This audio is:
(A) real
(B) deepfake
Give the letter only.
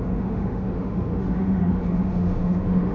B